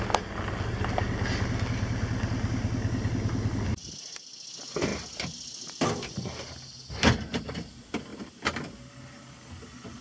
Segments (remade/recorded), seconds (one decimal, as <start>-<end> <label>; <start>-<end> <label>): 0.0-10.0 recorded